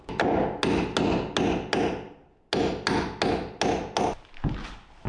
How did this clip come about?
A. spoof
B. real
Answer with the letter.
B